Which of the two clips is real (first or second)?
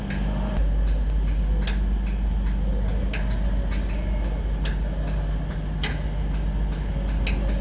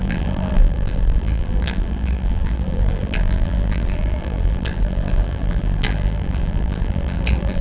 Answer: first